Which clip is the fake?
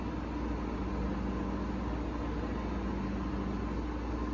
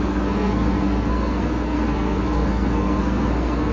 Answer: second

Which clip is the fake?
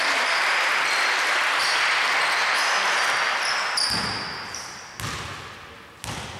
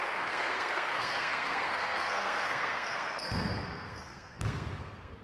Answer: second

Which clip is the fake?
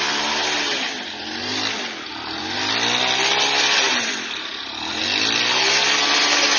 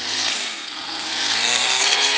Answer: second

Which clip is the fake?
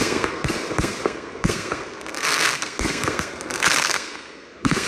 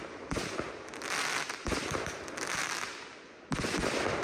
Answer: first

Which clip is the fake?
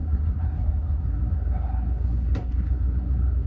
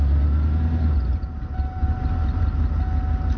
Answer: first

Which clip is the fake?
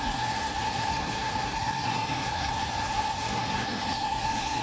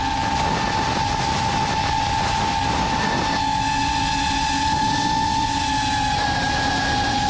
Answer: first